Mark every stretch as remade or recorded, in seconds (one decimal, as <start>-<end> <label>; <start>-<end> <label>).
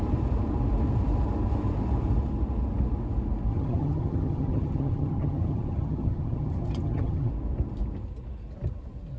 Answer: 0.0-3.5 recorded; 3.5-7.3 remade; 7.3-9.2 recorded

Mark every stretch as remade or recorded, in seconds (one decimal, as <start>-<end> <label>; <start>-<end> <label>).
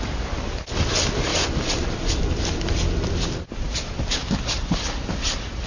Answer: 0.0-5.7 recorded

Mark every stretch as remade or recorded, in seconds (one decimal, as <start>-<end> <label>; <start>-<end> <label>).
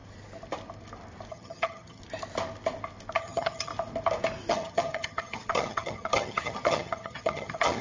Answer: 0.0-1.3 recorded; 1.3-2.0 remade; 2.0-3.2 recorded; 3.2-3.7 remade; 3.7-4.5 recorded; 4.5-7.8 remade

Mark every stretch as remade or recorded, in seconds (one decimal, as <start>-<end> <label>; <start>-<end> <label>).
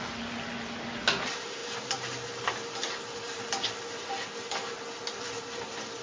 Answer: 0.0-6.0 recorded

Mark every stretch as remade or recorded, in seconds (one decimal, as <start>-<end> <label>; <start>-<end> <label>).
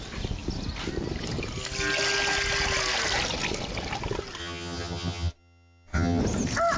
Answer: 0.0-4.4 recorded; 4.4-6.2 remade; 6.2-6.8 recorded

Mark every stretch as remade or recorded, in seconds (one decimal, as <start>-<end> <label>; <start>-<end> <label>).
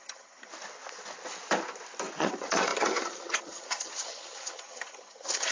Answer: 0.0-0.5 remade; 0.5-2.2 recorded; 2.2-5.5 remade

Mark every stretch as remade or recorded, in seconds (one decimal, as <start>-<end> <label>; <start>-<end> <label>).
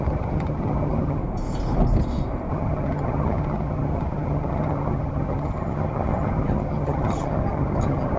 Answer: 0.0-1.2 remade; 1.2-2.5 recorded; 2.5-8.2 remade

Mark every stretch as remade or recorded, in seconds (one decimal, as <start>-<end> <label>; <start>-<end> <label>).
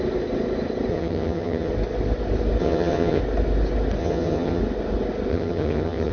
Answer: 0.0-0.9 recorded; 0.9-1.7 remade; 1.7-2.6 recorded; 2.6-3.2 remade; 3.2-4.0 recorded; 4.0-4.6 remade; 4.6-5.3 recorded; 5.3-6.1 remade